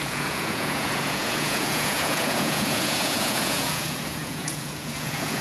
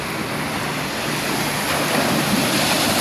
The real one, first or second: second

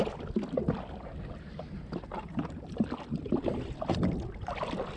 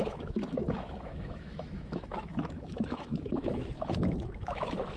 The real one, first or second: first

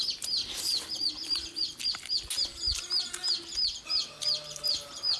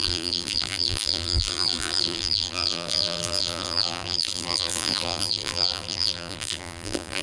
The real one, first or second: first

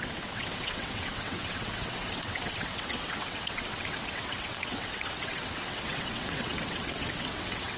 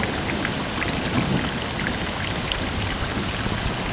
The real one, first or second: second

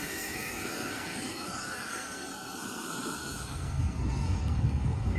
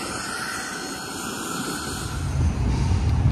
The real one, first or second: second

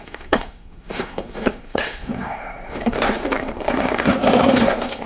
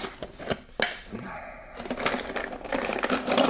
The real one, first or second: second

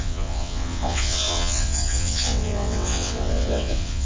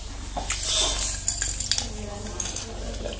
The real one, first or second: second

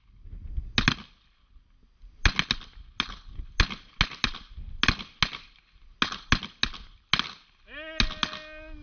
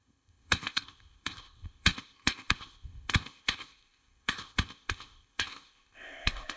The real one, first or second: first